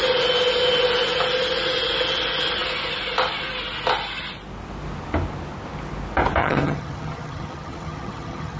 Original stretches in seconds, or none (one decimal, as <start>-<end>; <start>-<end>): 0.0-6.4